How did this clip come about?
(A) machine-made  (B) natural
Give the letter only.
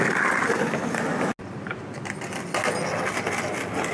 B